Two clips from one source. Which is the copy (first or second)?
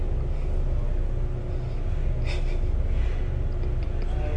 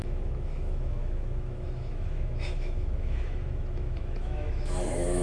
second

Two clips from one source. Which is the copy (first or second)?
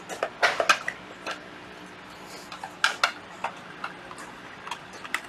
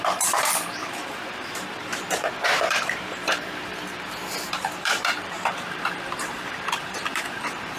second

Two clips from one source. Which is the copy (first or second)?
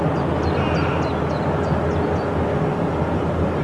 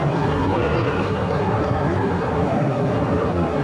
second